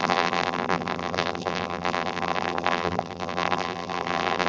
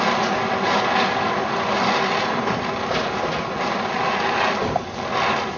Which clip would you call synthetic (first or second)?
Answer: first